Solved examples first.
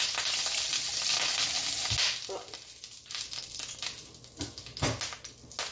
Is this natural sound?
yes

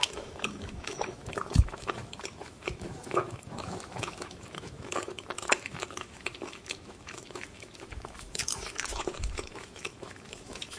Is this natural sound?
no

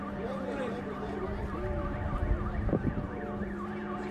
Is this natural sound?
no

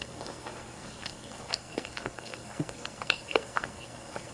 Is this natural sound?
no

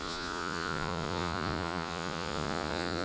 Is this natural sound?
no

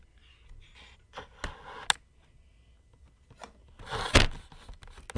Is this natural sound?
yes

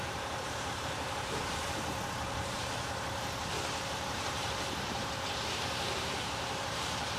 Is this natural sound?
no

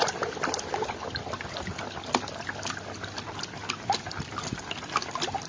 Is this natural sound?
yes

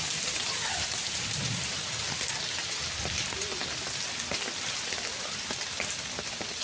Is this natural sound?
yes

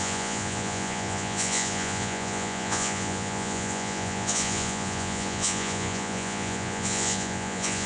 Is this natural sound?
no